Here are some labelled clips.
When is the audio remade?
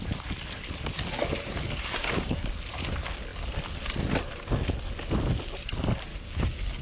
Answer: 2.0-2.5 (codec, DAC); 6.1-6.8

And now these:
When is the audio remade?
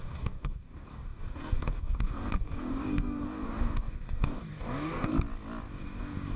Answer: 0.0-5.1 (codec, DAC); 5.7-6.4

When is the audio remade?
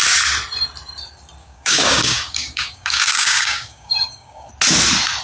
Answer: 1.4-4.5 (codec, DAC)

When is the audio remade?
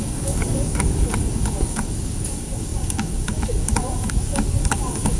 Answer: 0.0-5.2 (codec, DAC)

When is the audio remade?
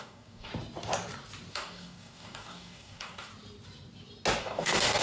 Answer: 0.0-0.5 (codec, DAC); 1.5-3.3; 4.4-5.0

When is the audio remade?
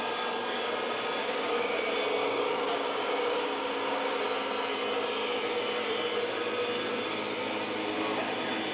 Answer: 1.2-1.7 (codec, DAC); 2.2-4.2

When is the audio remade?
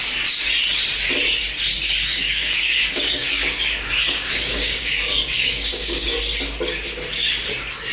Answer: 2.1-6.1 (codec, DAC)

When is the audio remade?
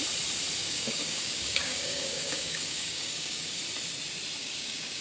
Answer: 0.6-3.6 (codec, DAC); 4.4-5.0